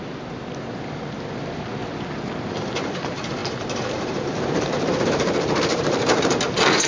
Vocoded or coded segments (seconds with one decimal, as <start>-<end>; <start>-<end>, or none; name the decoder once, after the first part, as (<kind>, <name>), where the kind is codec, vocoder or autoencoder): 0.0-1.8 (vocoder, BigVGAN v2); 2.6-6.9